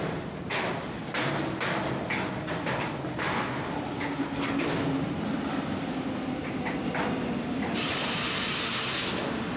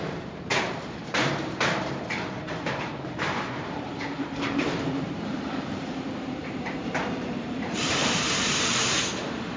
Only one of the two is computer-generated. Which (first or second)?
second